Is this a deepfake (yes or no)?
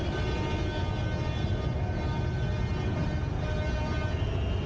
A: no